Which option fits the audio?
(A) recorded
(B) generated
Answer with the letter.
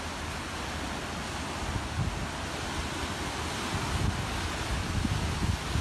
A